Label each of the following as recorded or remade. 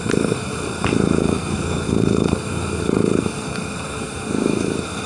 remade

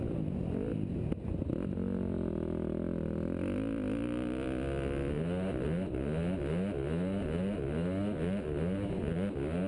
recorded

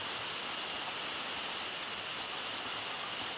recorded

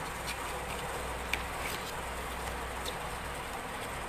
recorded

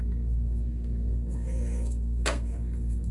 remade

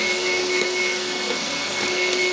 remade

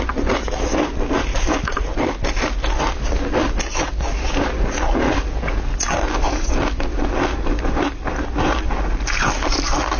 recorded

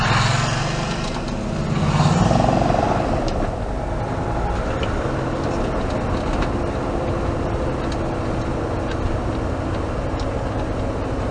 recorded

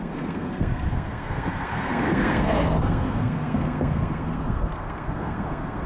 remade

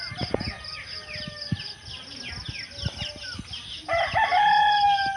recorded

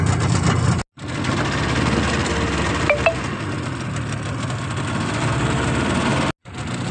recorded